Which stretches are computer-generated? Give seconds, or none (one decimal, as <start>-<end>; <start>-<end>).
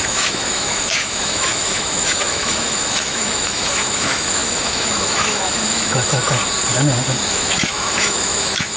0.0-6.2; 7.3-8.8